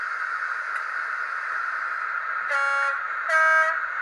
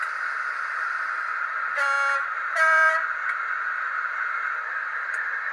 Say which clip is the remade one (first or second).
second